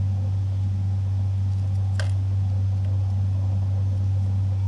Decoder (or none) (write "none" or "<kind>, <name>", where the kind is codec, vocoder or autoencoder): none